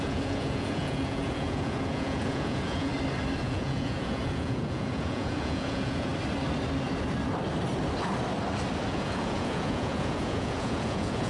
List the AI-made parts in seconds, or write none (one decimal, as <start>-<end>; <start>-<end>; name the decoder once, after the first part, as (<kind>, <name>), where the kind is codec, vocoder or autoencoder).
0.0-2.9 (vocoder, Vocos); 3.4-6.1; 8.9-11.3